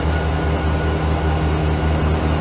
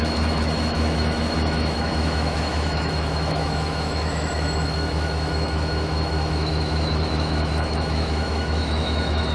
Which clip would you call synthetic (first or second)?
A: second